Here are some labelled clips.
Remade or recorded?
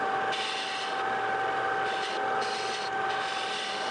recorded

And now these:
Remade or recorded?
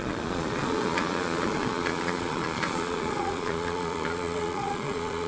remade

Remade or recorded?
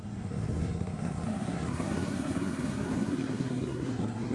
remade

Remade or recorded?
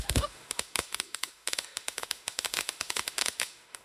remade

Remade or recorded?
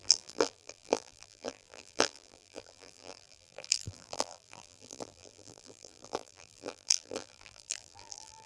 remade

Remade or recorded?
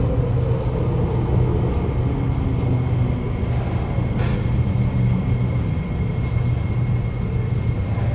recorded